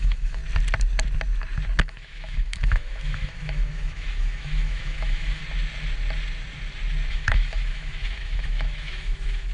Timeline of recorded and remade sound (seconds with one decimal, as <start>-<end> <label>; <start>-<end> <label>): 0.0-0.4 remade; 0.4-1.8 recorded; 1.8-5.4 remade; 5.4-7.1 recorded; 7.1-9.5 remade